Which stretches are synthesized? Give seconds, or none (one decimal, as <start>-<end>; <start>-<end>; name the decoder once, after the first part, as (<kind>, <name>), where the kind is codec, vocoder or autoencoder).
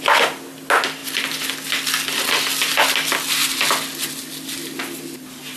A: none